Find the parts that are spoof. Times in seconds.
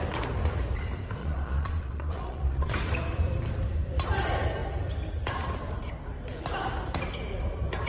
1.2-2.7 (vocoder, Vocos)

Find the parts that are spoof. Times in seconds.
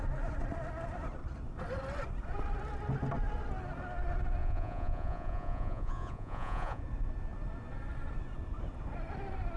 4.4-6.8 (vocoder, Vocos)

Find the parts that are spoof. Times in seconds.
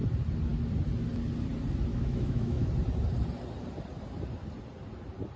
1.9-2.7 (autoencoder, DAC-VAE)